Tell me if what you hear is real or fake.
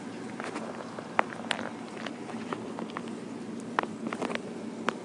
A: real